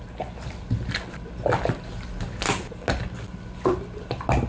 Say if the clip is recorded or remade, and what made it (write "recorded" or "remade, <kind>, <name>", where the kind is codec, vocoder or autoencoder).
recorded